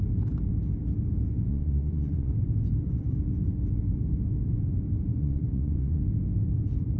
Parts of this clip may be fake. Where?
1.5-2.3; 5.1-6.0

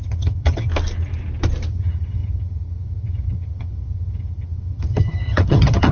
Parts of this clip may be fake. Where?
0.0-0.7; 1.7-5.9

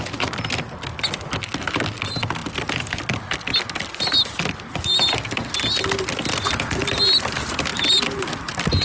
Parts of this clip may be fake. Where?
2.4-3.0; 7.7-8.2

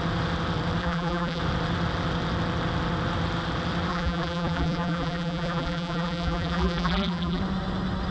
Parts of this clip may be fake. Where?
0.8-1.4; 3.9-7.4

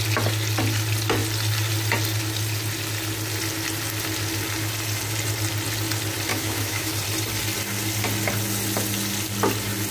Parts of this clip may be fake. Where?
6.3-6.9

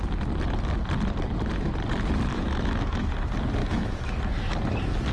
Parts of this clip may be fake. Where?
2.3-3.1; 3.6-4.1